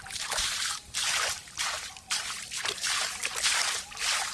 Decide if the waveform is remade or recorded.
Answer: recorded